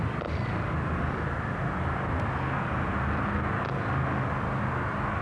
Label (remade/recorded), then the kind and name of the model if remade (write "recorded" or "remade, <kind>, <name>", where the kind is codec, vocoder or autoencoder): recorded